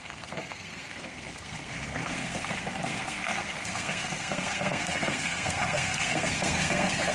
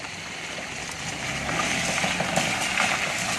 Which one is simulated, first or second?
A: first